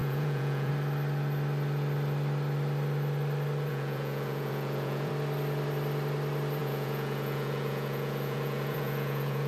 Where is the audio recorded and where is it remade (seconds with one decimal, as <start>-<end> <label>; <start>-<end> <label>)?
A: 0.0-0.7 remade; 0.7-3.7 recorded; 3.7-5.1 remade; 5.1-6.6 recorded; 6.6-9.5 remade